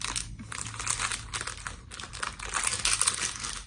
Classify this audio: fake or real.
real